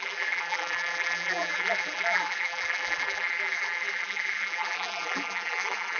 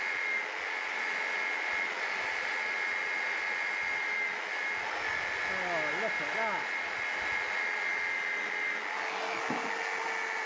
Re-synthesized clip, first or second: first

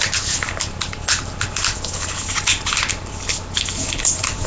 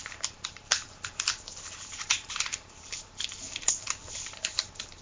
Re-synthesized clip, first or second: second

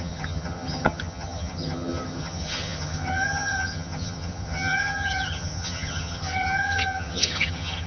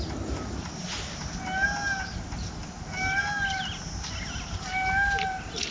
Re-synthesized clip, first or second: first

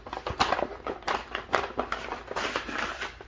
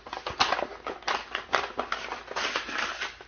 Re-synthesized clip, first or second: first